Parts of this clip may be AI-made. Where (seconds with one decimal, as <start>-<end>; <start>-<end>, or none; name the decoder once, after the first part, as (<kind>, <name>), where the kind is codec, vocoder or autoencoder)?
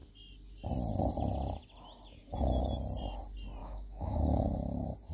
3.6-4.2 (autoencoder, DAC-VAE)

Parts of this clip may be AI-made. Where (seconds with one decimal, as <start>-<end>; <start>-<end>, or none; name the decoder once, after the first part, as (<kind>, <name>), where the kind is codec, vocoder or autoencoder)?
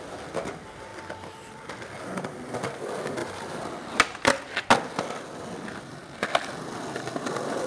none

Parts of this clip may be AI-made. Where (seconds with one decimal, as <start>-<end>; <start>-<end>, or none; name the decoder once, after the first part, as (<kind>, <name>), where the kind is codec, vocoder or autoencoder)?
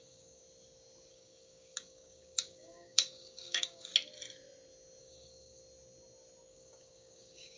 0.0-0.4 (codec, DAC); 1.1-3.9; 5.0-5.6; 6.5-7.6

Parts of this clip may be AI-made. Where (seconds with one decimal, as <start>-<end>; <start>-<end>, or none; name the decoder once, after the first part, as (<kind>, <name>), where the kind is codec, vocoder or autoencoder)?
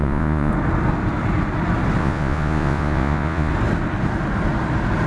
0.0-0.5 (vocoder, Vocos); 2.0-3.5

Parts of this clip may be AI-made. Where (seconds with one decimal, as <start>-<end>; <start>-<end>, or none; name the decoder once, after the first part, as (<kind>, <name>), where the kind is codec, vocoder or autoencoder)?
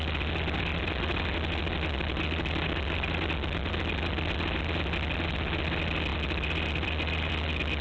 0.7-3.7 (vocoder, BigVGAN v2); 6.1-7.3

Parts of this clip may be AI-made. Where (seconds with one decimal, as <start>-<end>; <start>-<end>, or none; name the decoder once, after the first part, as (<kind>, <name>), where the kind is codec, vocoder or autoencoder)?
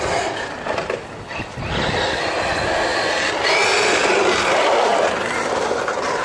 2.9-3.4 (vocoder, BigVGAN v2)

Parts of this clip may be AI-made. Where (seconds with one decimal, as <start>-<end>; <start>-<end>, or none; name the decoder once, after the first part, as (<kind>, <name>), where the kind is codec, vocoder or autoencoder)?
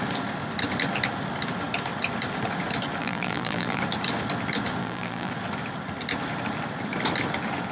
3.0-3.8 (vocoder, BigVGAN v2); 4.8-5.3